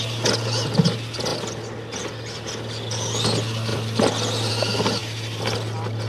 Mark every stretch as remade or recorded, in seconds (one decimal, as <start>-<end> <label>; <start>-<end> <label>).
0.0-3.7 recorded; 3.7-4.5 remade; 4.5-6.1 recorded